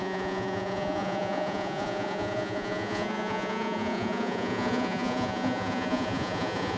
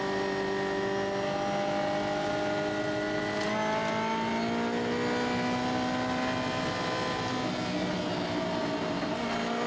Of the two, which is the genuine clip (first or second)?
second